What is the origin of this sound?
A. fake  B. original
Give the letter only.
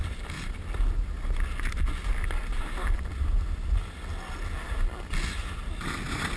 B